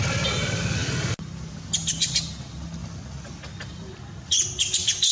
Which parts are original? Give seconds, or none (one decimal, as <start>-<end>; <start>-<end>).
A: 0.0-5.1